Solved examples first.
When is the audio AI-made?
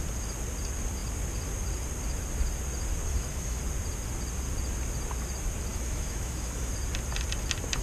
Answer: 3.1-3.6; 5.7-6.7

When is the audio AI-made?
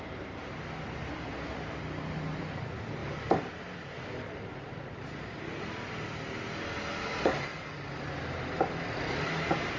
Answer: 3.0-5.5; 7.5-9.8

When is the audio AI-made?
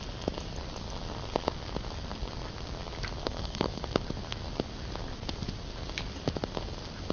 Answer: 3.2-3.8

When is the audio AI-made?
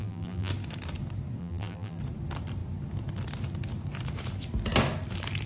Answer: 0.0-0.5; 1.4-2.0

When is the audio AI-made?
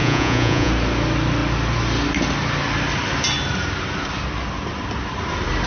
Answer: 0.0-0.7